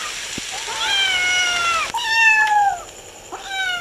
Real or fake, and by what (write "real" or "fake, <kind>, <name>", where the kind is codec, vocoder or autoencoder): real